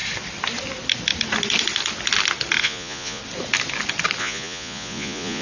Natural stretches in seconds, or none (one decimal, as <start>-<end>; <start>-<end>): 0.0-2.6; 3.2-4.2